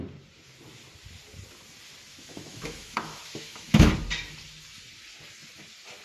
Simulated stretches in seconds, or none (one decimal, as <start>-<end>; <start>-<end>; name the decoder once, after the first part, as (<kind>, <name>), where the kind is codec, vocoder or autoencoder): 2.1-3.9 (autoencoder, DAC-VAE)